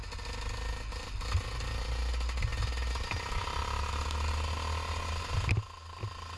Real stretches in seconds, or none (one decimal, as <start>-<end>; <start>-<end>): 0.0-6.4